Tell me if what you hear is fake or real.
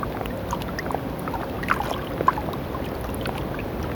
real